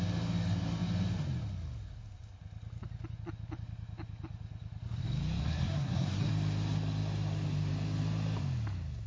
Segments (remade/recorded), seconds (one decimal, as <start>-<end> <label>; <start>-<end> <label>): 0.0-5.4 recorded; 5.4-6.3 remade; 6.3-9.1 recorded